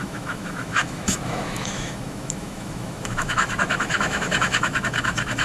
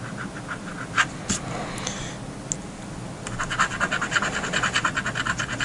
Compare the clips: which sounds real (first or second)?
second